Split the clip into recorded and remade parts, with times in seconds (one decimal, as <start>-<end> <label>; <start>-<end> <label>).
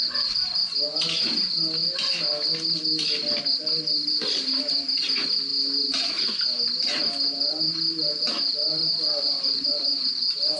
0.0-8.8 recorded; 8.8-10.1 remade; 10.1-10.6 recorded